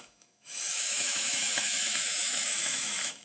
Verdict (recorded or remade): remade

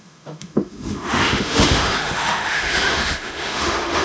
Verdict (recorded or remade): remade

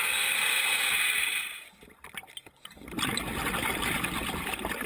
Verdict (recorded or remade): recorded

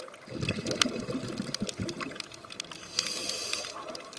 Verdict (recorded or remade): recorded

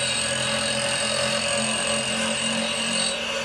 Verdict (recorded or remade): recorded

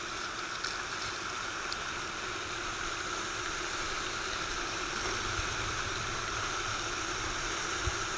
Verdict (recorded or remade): recorded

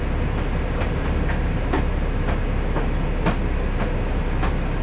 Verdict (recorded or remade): recorded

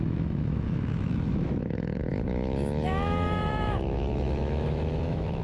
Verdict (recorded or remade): remade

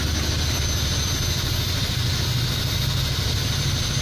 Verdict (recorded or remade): recorded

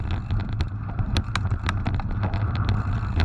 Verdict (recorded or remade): recorded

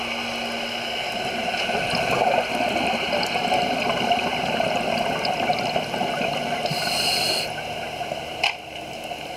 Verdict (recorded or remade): recorded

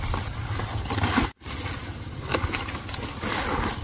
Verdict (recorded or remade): recorded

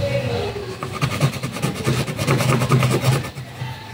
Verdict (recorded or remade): recorded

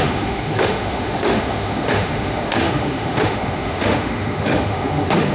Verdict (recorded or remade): remade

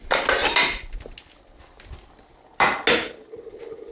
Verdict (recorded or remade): recorded